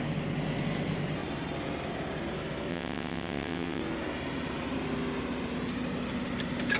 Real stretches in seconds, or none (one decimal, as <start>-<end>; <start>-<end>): 0.0-2.7; 3.8-6.8